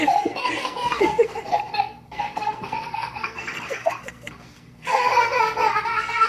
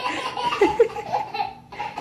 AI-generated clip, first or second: first